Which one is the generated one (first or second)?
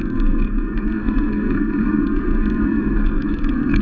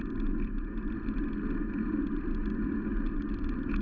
first